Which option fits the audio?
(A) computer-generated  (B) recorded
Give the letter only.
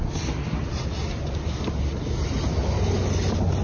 B